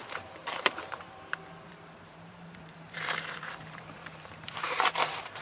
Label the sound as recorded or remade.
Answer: remade